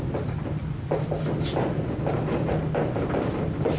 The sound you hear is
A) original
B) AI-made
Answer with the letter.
A